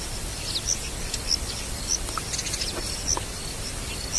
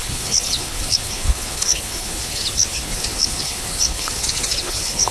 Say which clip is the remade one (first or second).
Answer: second